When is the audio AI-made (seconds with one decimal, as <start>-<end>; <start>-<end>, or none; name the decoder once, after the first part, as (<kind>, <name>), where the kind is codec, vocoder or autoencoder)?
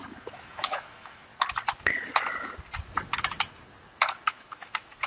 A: 0.0-1.3 (autoencoder, DAC-VAE); 4.3-5.1